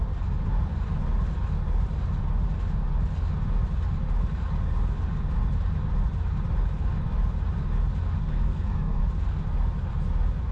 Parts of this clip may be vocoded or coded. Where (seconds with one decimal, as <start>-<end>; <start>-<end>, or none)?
8.2-9.0